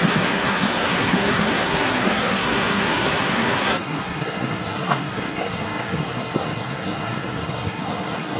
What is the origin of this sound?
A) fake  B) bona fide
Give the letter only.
A